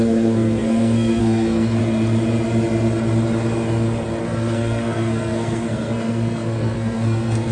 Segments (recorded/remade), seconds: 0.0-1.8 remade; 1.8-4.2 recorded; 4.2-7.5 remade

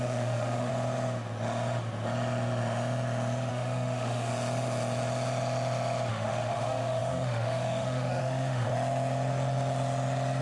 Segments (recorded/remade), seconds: 0.0-0.7 remade; 0.7-3.5 recorded; 3.5-4.3 remade; 4.3-6.1 recorded; 6.1-8.7 remade; 8.7-10.4 recorded

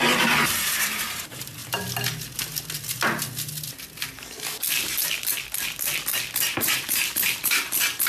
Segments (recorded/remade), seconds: 0.0-1.6 remade; 1.6-6.5 recorded; 6.5-8.1 remade

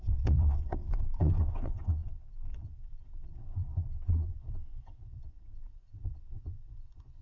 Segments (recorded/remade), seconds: 0.0-7.2 remade

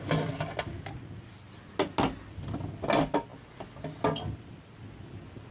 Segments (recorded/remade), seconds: 0.0-5.5 recorded

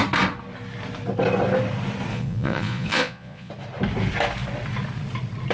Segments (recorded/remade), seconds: 0.0-2.1 recorded; 2.1-3.5 remade; 3.5-5.5 recorded

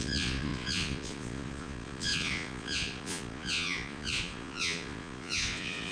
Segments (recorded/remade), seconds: 0.0-5.9 remade